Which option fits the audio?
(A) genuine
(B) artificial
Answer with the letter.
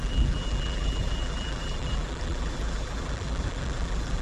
B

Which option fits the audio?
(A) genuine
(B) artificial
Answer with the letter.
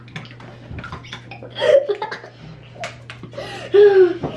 A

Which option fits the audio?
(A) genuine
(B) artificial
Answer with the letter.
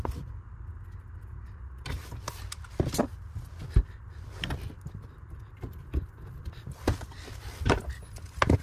A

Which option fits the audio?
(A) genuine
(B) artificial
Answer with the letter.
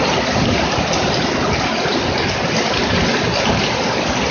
B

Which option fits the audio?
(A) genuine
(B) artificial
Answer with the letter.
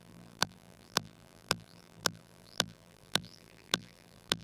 B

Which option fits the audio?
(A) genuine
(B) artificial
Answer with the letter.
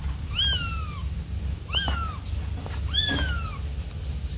A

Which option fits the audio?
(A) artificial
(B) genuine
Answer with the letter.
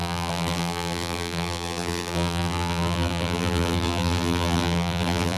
A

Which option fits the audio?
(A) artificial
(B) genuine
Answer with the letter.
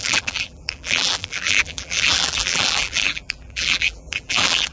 A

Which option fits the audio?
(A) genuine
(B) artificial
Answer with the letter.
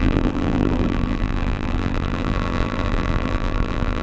B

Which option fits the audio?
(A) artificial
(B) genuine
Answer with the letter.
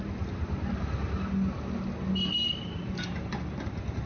B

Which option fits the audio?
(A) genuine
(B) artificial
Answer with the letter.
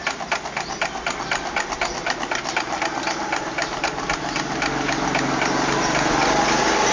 A